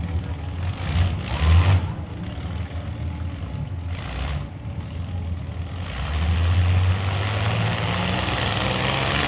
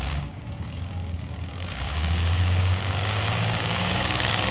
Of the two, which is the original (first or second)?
first